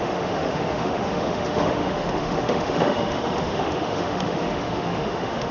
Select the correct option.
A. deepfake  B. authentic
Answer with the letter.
A